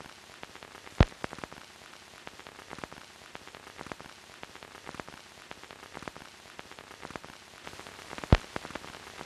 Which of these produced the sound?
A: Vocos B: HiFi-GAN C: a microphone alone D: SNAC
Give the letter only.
C